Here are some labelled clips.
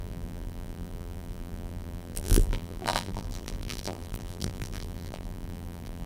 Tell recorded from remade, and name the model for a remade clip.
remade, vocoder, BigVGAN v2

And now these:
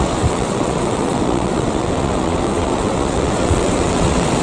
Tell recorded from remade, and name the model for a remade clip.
remade, vocoder, WaveNeXt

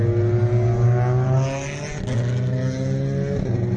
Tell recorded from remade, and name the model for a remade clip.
recorded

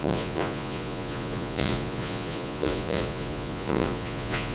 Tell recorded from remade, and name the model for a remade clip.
remade, vocoder, Vocos